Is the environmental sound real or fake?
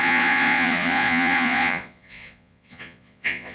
fake